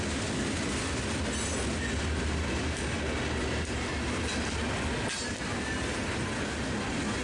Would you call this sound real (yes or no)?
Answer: yes